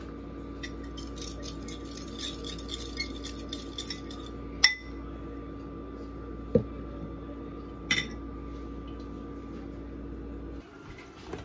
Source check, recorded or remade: recorded